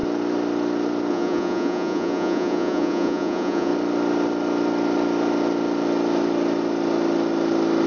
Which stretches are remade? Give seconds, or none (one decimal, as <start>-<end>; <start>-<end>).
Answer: 1.1-3.7